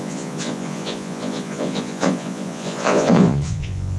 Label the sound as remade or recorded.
remade